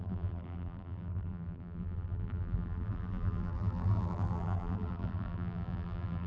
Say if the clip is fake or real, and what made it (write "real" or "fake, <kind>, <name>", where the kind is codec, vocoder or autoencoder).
fake, vocoder, BigVGAN v2